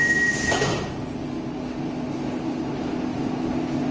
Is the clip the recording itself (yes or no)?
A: yes